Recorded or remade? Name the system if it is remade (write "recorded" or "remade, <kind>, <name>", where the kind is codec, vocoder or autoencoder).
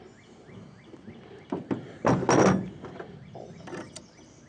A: recorded